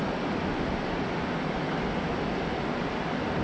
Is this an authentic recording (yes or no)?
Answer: yes